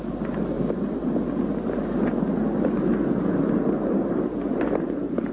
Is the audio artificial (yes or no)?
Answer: no